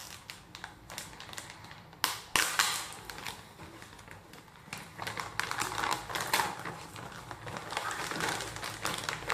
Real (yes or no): yes